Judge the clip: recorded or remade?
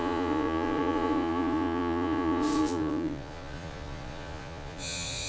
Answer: remade